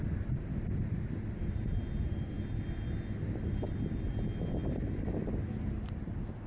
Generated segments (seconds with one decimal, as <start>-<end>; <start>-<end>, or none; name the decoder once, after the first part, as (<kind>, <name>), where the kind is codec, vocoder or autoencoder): none